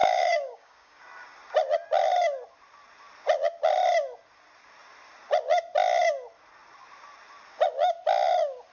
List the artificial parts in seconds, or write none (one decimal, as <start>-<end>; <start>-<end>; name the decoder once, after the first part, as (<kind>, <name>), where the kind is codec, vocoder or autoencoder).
0.0-1.0 (codec, DAC)